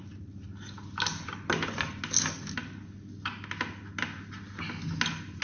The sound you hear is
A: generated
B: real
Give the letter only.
B